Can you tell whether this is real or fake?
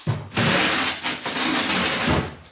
real